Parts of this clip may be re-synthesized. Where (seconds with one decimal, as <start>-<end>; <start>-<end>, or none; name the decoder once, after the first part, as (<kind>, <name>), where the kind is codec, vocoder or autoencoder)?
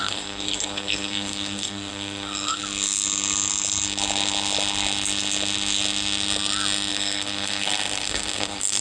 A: 0.0-2.6 (codec, SNAC); 6.9-8.8